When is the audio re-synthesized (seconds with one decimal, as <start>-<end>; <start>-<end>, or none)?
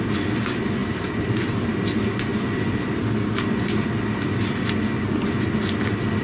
0.8-1.6